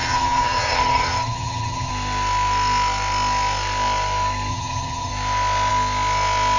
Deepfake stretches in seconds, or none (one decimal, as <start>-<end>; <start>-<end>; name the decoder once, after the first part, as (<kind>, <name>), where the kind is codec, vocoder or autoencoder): 0.0-1.9 (vocoder, HiFi-GAN); 4.5-5.1